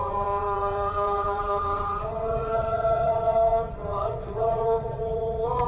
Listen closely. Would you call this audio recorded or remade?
remade